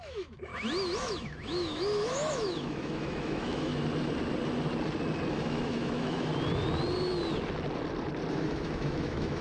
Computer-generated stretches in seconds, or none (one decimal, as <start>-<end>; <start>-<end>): 0.0-0.5; 1.0-3.7; 5.3-6.3; 8.3-9.4